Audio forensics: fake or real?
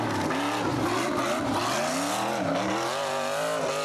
real